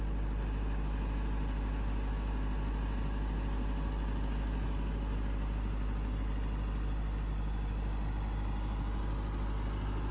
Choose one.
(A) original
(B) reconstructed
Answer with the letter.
A